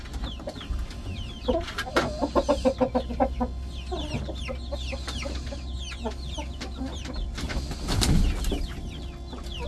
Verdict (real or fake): real